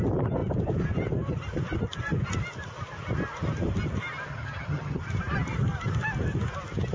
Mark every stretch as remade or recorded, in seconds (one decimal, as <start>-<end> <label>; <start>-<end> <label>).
0.0-4.3 recorded; 4.3-5.0 remade; 5.0-6.9 recorded